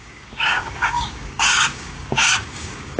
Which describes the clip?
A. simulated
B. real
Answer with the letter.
A